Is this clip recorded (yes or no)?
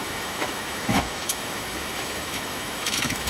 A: no